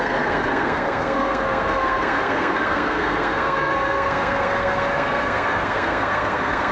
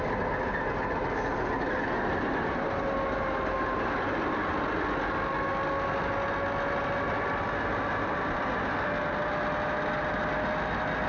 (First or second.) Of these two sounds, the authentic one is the second